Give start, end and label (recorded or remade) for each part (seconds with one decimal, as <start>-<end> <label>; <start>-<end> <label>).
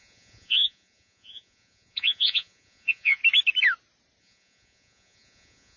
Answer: 0.0-3.2 remade; 3.2-4.2 recorded; 4.2-5.8 remade